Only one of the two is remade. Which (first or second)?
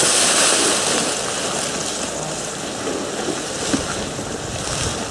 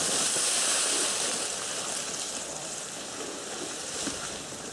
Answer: second